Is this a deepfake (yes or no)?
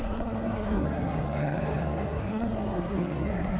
yes